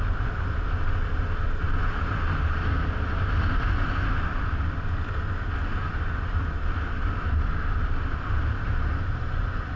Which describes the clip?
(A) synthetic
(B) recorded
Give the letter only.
B